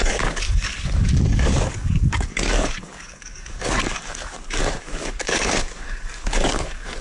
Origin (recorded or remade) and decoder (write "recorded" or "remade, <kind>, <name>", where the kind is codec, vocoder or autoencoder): remade, codec, DAC